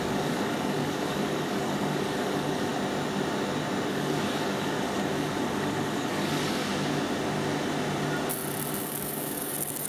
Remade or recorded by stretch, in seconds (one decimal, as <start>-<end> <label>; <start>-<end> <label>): 0.0-2.7 remade; 2.7-3.9 recorded; 3.9-6.7 remade; 6.7-8.8 recorded; 8.8-9.9 remade